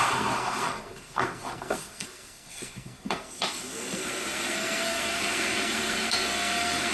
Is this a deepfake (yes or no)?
yes